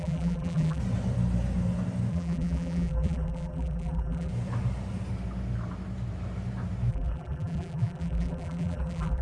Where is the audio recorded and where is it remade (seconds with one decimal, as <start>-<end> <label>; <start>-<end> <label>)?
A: 0.0-0.8 remade; 0.8-2.1 recorded; 2.1-4.3 remade; 4.3-6.9 recorded; 6.9-9.2 remade